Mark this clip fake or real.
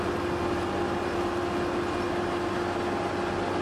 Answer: real